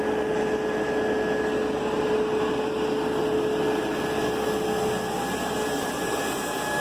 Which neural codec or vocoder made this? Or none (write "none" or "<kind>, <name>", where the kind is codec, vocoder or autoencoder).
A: none